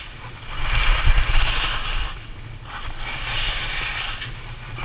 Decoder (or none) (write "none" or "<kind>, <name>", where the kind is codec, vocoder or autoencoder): none